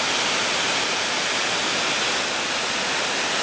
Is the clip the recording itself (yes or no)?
yes